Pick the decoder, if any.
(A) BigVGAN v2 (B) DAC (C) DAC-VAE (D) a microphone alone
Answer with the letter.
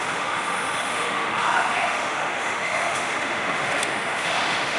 C